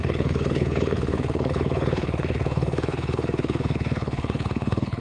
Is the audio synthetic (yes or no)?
yes